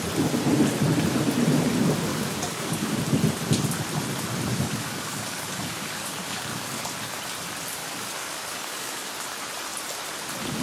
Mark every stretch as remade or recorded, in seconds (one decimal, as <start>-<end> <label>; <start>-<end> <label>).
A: 0.0-2.1 recorded; 2.1-3.0 remade; 3.0-4.5 recorded; 4.5-6.8 remade; 6.8-7.8 recorded; 7.8-9.1 remade; 9.1-10.6 recorded